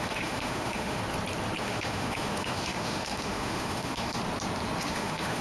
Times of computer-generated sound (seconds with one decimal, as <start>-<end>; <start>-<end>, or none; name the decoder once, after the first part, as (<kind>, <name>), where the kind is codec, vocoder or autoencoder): 0.0-1.0 (autoencoder, DAC-VAE); 1.6-4.2; 4.8-5.4